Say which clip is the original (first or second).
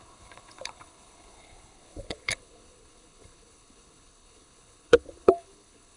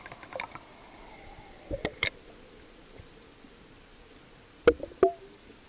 second